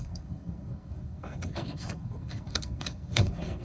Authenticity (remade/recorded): remade